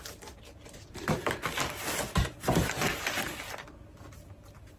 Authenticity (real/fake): real